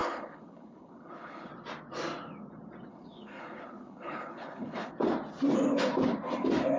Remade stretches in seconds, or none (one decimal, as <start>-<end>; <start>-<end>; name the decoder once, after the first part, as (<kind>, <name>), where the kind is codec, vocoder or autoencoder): 0.0-1.5 (codec, HILCodec); 2.9-4.9